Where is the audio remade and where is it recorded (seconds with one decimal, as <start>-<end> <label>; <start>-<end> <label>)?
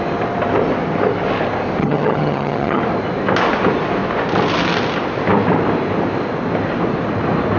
0.0-1.8 recorded; 1.8-2.8 remade; 2.8-7.6 recorded